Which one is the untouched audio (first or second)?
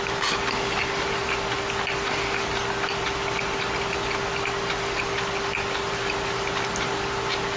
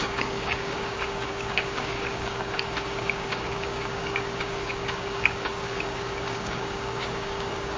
first